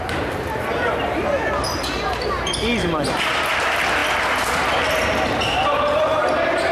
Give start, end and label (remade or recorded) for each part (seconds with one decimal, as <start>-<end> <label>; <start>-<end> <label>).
0.0-4.0 remade; 4.0-5.3 recorded; 5.3-6.7 remade